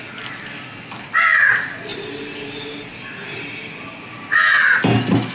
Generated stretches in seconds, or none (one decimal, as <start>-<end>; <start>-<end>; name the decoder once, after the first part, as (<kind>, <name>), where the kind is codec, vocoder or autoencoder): none